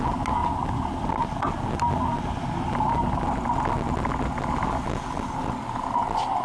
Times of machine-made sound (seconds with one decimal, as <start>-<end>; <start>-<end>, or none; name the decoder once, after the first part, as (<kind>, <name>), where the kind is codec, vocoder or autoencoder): none